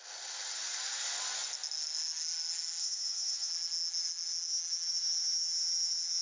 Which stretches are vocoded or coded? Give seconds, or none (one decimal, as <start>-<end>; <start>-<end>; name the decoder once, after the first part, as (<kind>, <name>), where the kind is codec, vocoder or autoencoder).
2.8-3.5 (vocoder, HiFi-GAN)